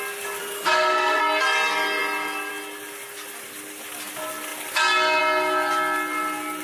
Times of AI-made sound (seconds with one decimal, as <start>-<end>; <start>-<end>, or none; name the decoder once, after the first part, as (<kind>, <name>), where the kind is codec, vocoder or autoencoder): 0.4-1.2 (codec, SNAC)